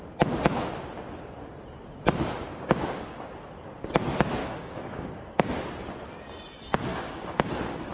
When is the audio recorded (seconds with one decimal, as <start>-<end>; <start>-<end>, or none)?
0.0-2.5; 3.2-4.4; 5.5-6.9